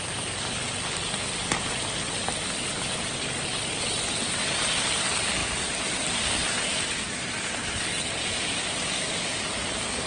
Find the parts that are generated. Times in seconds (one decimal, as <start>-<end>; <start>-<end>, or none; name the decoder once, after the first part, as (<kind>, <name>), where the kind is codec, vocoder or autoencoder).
none